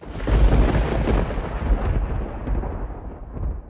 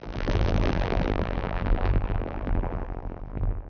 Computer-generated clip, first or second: second